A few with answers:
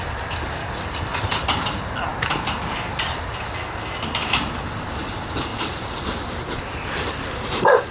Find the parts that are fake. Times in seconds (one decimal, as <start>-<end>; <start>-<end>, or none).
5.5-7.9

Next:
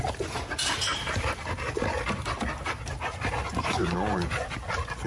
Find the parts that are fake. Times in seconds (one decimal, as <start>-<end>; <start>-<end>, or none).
0.9-1.7; 3.5-4.6

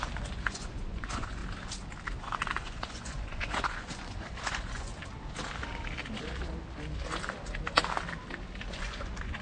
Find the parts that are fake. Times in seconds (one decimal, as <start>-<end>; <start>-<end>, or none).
0.0-1.4; 2.2-4.9; 8.7-9.4